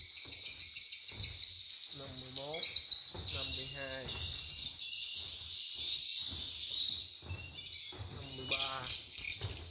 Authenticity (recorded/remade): recorded